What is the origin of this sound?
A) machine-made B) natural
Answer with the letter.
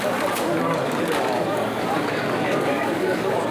A